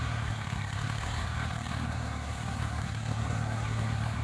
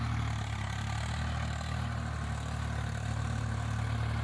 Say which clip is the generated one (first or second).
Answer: first